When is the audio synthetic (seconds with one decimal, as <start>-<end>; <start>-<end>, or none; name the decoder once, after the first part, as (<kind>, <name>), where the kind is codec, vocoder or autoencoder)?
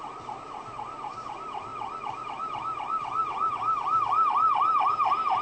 none